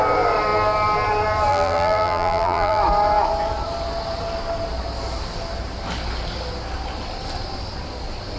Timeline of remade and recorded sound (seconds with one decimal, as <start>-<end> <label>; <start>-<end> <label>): 0.0-1.5 recorded; 1.5-2.8 remade; 2.8-8.4 recorded